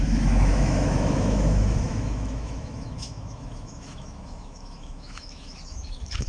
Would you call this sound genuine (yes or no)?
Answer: no